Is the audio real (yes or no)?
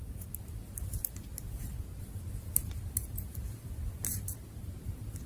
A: no